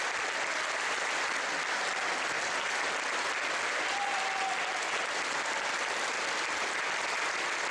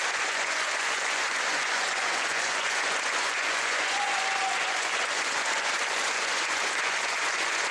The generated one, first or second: second